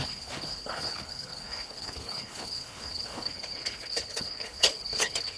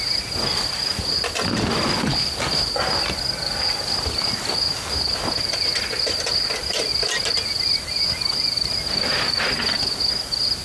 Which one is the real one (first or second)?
second